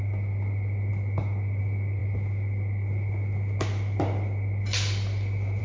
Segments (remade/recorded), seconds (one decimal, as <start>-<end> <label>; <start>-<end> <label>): 0.0-5.6 recorded